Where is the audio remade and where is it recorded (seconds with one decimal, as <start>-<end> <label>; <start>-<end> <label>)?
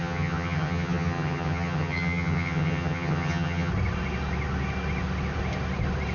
0.0-3.7 remade; 3.7-6.1 recorded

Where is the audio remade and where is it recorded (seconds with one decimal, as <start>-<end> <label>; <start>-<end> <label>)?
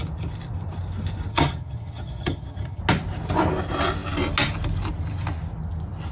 0.0-1.3 recorded; 1.3-2.8 remade; 2.8-6.1 recorded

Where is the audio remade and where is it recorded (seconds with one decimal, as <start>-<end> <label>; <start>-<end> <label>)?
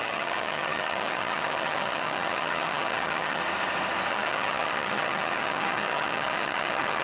0.0-3.4 remade; 3.4-4.1 recorded; 4.1-7.0 remade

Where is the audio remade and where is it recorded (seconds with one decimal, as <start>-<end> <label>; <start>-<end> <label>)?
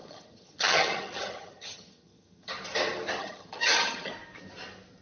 0.0-2.5 remade; 2.5-3.2 recorded; 3.2-4.1 remade; 4.1-5.0 recorded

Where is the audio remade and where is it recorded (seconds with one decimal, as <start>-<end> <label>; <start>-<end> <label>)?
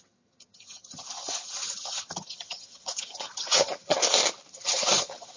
0.0-4.0 remade; 4.0-4.5 recorded; 4.5-5.4 remade